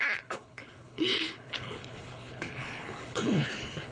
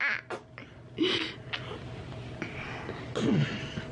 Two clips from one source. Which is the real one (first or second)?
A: second